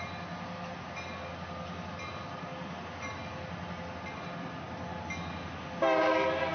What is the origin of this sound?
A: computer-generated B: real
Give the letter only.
B